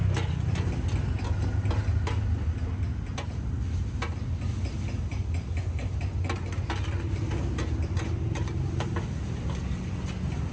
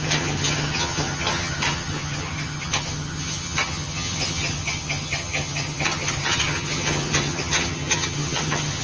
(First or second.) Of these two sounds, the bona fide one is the first